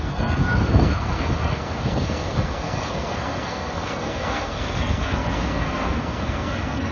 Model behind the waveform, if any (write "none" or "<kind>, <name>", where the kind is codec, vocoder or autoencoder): codec, SNAC